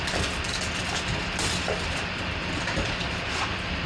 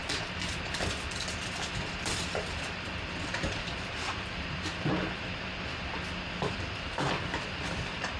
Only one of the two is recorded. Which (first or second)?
first